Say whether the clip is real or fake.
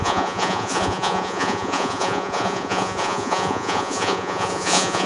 fake